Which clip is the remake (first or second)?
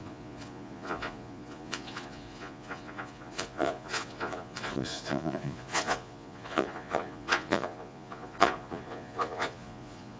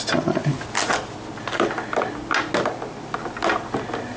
first